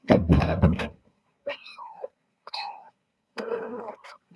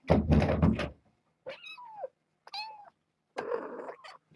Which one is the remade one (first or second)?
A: first